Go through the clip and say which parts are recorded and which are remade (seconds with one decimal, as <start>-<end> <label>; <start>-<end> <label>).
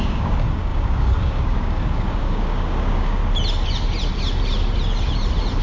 0.0-3.2 remade; 3.2-5.6 recorded